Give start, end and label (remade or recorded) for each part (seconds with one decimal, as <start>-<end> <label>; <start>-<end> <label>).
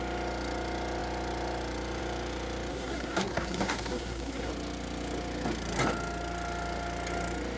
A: 0.0-2.7 recorded; 2.7-4.5 remade; 4.5-7.6 recorded